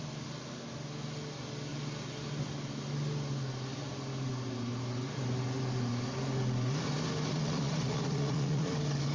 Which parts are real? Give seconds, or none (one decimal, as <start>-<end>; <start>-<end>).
0.0-7.3; 8.7-9.1